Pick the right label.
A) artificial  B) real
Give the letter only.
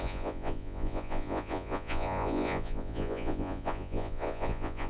A